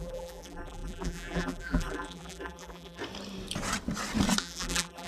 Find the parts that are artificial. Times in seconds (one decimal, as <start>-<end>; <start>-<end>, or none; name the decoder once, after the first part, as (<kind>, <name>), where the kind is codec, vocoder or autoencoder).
0.0-3.0 (vocoder, BigVGAN v2); 4.4-5.1